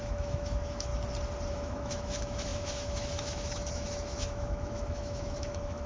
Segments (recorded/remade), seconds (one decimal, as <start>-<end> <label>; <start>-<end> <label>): 0.0-0.9 remade; 0.9-1.5 recorded; 1.5-5.9 remade